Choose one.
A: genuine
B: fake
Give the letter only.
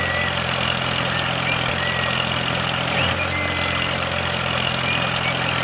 A